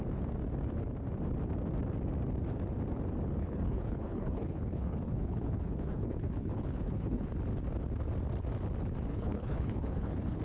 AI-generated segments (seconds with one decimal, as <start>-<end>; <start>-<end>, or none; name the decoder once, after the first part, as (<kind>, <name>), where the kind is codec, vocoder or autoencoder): 3.4-7.3 (codec, HILCodec); 9.1-10.4